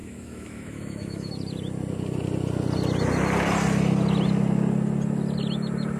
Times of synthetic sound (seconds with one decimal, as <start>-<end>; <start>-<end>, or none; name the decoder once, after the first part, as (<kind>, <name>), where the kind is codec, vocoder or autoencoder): 0.0-1.3 (autoencoder, DAC-VAE)

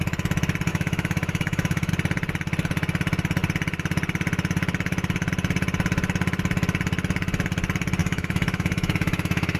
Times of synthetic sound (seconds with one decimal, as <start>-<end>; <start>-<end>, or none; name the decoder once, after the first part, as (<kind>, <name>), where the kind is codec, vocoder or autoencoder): 0.7-1.9 (autoencoder, DAC-VAE); 8.0-9.6

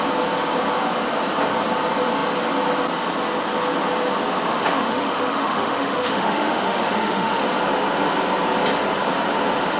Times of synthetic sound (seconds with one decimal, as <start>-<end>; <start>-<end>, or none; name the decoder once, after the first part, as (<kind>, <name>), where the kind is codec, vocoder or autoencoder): 4.5-7.4 (autoencoder, DAC-VAE)

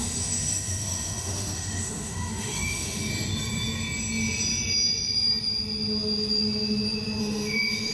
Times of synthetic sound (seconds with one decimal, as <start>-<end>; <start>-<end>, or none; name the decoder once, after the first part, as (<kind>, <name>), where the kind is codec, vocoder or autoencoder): 0.0-3.1 (autoencoder, DAC-VAE); 7.2-7.9

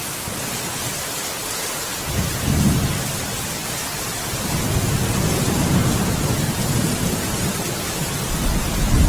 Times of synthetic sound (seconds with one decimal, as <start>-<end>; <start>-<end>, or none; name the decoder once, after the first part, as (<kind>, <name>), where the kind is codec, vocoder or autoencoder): none

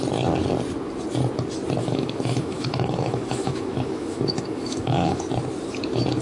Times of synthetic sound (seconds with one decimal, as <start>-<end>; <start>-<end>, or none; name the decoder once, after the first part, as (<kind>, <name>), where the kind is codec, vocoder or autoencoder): 1.8-5.2 (autoencoder, DAC-VAE)

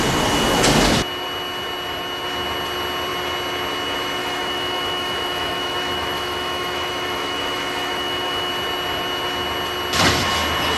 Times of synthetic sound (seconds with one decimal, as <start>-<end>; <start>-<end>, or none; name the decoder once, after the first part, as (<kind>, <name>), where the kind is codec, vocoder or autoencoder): 4.2-8.5 (autoencoder, DAC-VAE)